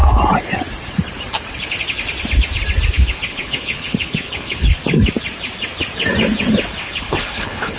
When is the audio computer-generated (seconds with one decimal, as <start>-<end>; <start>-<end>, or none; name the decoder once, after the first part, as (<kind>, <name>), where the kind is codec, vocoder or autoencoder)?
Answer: 2.9-4.7 (codec, HILCodec); 6.8-7.8